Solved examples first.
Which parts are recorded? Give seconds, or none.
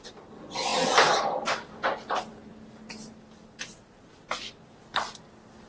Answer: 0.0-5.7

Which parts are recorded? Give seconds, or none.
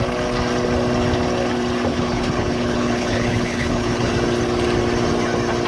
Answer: 0.0-1.9; 4.1-5.7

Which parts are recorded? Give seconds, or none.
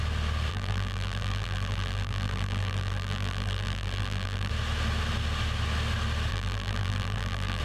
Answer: 0.0-0.5; 4.5-6.3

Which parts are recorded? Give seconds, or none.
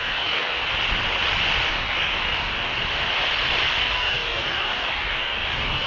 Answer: 0.6-1.7; 2.8-3.8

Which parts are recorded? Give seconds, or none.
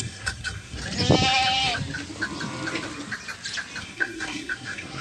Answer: 0.8-3.8